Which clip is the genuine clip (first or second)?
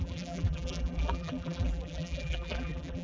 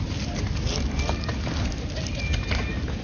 second